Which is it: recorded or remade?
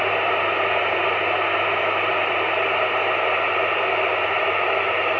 recorded